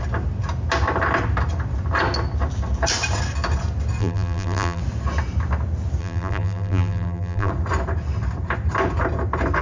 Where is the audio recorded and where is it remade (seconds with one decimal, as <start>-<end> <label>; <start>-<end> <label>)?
0.0-4.0 recorded; 4.0-4.8 remade; 4.8-6.0 recorded; 6.0-7.5 remade; 7.5-9.6 recorded